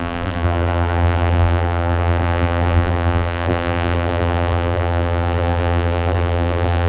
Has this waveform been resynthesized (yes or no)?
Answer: yes